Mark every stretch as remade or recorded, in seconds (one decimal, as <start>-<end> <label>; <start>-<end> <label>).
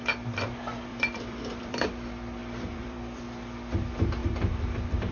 0.0-0.9 recorded; 0.9-1.8 remade; 1.8-2.4 recorded; 2.4-3.2 remade; 3.2-4.2 recorded; 4.2-5.1 remade